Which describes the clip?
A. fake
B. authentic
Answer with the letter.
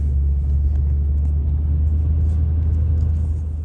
B